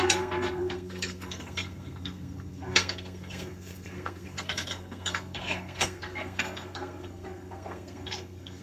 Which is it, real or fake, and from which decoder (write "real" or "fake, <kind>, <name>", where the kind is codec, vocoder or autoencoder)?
fake, codec, SNAC